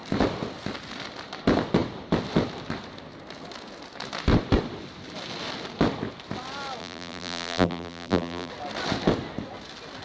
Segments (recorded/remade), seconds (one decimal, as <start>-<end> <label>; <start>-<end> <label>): 0.0-6.8 recorded; 6.8-8.5 remade; 8.5-10.0 recorded